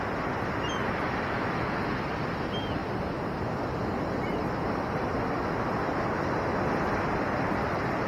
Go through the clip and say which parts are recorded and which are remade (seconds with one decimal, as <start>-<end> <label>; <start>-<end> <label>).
0.0-8.1 recorded